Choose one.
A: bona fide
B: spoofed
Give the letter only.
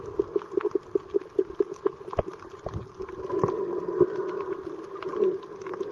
A